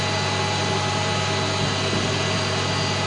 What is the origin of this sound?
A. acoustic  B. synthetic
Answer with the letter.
A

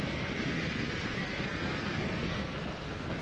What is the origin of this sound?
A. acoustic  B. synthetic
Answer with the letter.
B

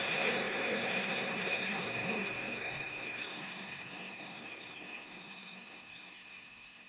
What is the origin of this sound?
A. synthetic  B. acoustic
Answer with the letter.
A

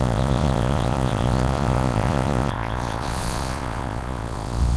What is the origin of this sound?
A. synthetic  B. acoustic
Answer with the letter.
A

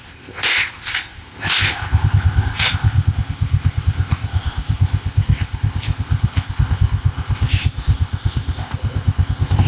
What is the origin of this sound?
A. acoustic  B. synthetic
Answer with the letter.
B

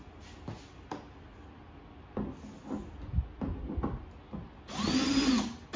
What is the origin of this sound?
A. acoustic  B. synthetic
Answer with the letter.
A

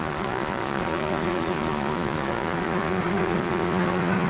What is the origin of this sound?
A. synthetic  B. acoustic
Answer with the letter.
A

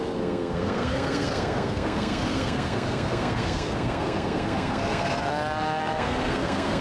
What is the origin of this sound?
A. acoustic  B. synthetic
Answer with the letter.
B